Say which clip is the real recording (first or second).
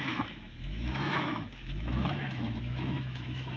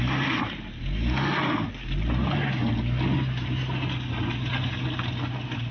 second